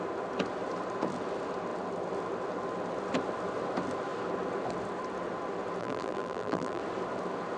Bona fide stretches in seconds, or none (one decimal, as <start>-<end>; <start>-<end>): 0.0-5.8; 6.8-7.6